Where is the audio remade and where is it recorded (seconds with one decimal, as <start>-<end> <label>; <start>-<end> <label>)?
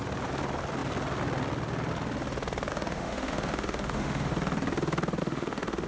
0.0-2.7 recorded; 2.7-4.3 remade; 4.3-5.2 recorded; 5.2-5.9 remade